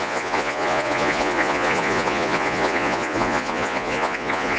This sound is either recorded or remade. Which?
remade